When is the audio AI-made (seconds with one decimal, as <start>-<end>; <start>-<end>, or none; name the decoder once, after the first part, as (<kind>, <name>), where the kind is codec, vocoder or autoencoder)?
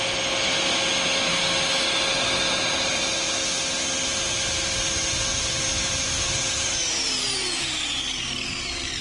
5.3-9.0 (vocoder, BigVGAN v2)